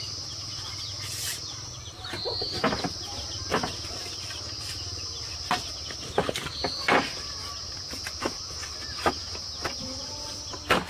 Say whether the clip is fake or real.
real